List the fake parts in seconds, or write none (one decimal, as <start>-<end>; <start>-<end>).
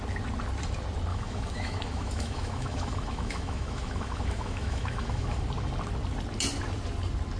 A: 1.1-5.4